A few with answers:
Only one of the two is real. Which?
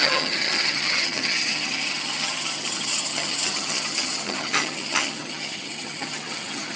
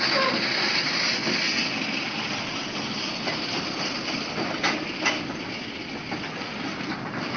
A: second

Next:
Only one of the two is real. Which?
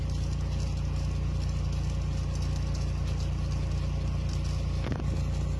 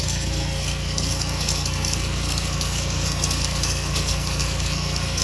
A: first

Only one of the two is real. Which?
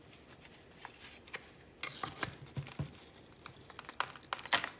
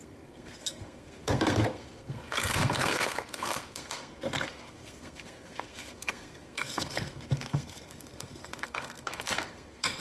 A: first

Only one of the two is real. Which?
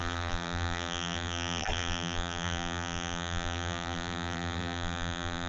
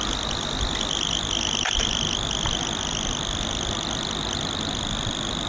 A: second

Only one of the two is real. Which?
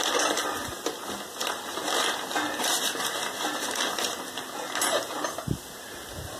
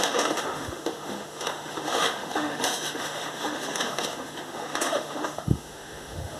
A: first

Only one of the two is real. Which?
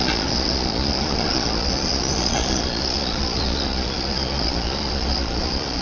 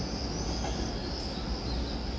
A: second